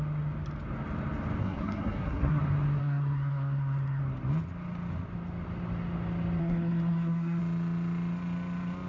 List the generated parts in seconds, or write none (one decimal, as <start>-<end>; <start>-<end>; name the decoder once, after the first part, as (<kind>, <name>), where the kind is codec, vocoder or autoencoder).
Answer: 1.4-2.4 (codec, SNAC); 2.8-4.0; 6.4-7.4